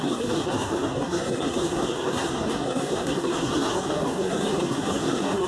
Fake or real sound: fake